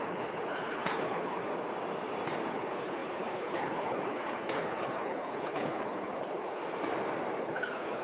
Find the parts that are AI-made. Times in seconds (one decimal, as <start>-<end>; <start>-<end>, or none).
0.0-1.5; 2.5-6.6; 7.4-8.0